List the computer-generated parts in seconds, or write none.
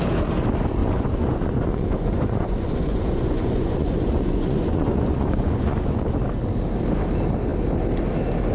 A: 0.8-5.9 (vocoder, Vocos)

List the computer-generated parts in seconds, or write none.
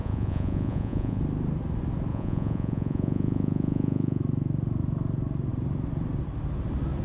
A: 0.0-1.2 (vocoder, Vocos); 2.1-4.2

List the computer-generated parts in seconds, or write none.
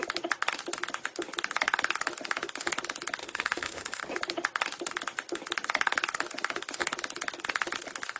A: 3.2-4.0 (autoencoder, DAC-VAE)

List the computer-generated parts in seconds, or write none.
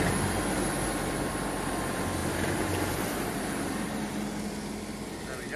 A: 2.2-4.0 (vocoder, BigVGAN v2)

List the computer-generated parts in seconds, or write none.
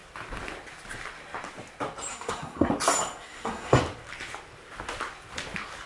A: 2.1-2.7 (codec, SNAC); 3.2-3.8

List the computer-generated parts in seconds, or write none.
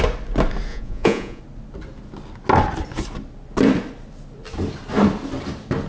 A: 0.7-1.4 (vocoder, Vocos)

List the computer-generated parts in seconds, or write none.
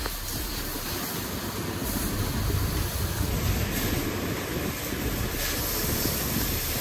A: none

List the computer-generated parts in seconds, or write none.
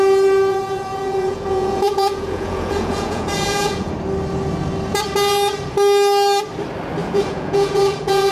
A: 0.5-3.9 (vocoder, Vocos); 7.0-8.3